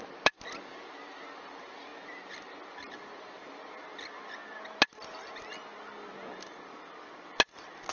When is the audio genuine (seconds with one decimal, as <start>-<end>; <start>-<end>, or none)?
0.0-7.9